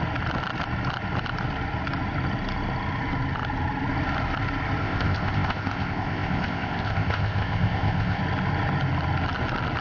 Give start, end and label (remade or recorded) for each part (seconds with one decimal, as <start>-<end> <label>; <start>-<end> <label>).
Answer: 0.0-4.8 recorded; 4.8-8.2 remade; 8.2-9.8 recorded